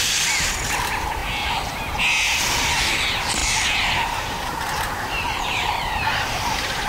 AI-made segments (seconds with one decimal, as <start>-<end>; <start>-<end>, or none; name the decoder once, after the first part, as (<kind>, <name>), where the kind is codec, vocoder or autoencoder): 3.4-6.3 (vocoder, BigVGAN v2)